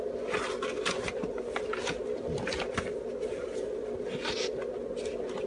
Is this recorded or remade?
recorded